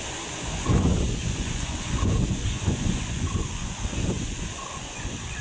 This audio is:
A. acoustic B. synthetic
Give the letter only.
B